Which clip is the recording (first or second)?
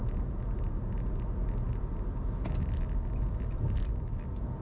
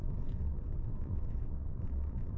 first